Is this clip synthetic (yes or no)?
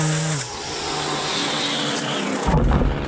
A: no